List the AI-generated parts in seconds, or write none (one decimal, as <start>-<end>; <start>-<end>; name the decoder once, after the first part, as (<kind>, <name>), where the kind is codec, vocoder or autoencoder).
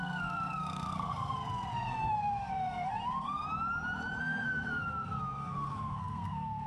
0.0-3.4 (codec, SNAC); 4.2-6.7